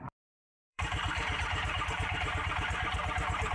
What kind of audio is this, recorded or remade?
remade